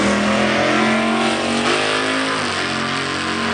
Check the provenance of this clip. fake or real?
real